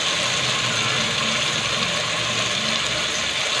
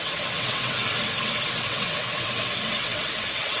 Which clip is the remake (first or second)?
second